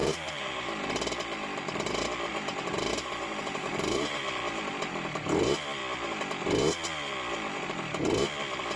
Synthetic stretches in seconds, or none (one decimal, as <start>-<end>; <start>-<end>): 0.0-0.7; 2.3-4.2